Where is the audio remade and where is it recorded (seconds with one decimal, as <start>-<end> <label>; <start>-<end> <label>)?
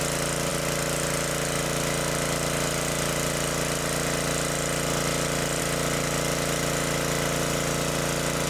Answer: 0.0-8.5 recorded